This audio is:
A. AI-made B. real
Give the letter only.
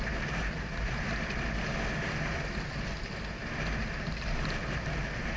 B